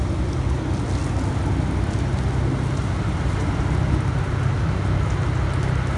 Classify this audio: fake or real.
real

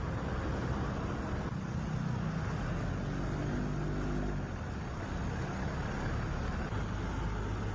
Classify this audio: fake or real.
real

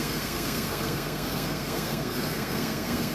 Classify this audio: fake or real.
fake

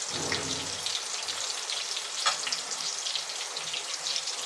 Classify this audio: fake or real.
real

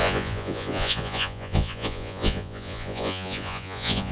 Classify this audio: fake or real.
fake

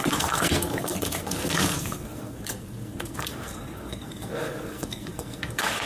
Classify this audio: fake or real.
fake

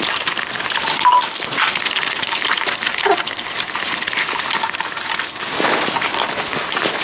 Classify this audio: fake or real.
real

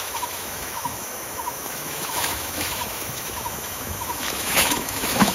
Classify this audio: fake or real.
fake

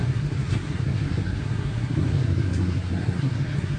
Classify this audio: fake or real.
fake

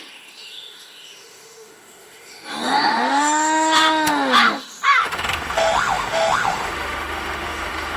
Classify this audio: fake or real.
fake